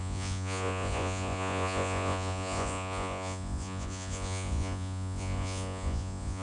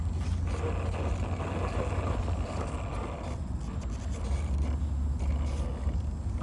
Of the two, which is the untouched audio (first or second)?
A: second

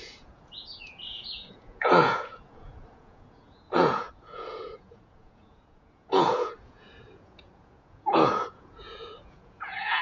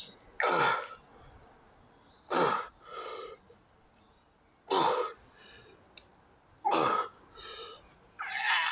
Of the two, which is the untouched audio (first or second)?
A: second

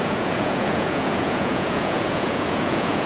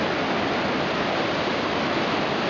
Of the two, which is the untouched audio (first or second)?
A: second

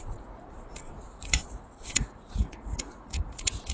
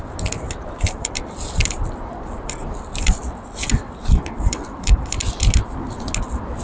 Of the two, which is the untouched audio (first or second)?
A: second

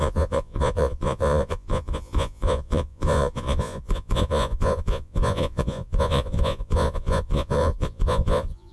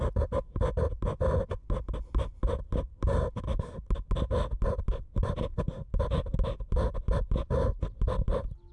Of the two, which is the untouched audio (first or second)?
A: second